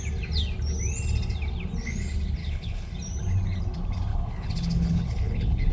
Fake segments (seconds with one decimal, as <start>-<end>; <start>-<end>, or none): 2.4-2.9; 4.1-5.7